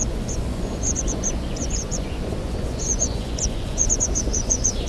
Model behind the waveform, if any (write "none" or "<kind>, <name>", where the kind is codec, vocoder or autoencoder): vocoder, Vocos